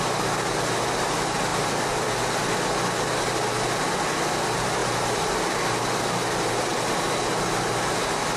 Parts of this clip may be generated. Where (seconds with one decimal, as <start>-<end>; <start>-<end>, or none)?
1.5-2.0; 4.8-5.8